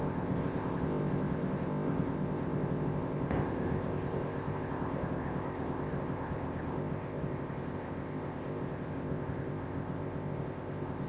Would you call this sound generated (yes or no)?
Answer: yes